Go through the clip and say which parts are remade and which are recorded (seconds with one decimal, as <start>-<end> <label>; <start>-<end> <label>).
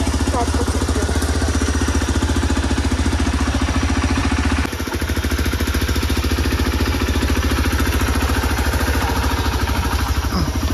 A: 0.0-10.7 recorded